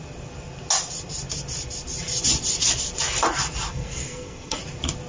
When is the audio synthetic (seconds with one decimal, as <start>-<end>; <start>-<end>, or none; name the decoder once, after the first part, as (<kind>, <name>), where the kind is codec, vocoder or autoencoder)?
3.7-4.6 (codec, SNAC)